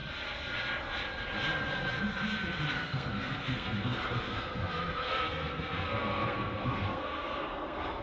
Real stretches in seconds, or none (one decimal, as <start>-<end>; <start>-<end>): 0.0-2.7